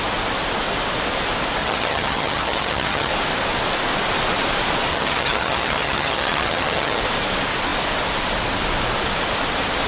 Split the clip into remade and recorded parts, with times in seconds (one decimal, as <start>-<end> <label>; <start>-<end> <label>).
0.0-1.6 recorded; 1.6-3.1 remade; 3.1-4.9 recorded; 4.9-7.0 remade; 7.0-9.9 recorded